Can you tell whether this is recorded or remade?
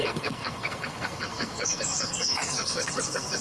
remade